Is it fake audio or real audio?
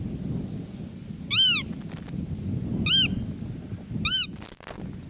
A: real